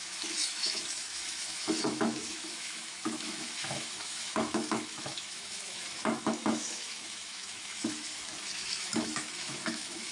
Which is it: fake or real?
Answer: fake